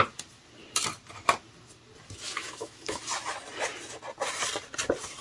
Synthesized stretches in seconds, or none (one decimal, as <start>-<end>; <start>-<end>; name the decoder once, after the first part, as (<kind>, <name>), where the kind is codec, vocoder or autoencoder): 2.4-3.0 (autoencoder, DAC-VAE)